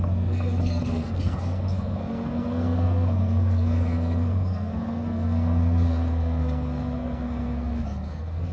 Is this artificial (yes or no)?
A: yes